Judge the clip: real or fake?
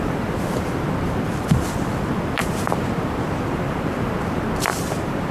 fake